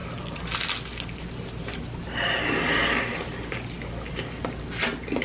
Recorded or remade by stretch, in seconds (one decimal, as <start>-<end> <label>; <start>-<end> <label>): 0.0-5.2 recorded